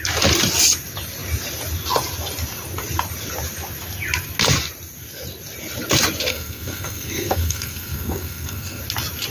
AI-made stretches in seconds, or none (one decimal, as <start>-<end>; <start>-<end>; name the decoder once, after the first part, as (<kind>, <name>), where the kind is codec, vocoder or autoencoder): 6.3-8.8 (codec, SNAC)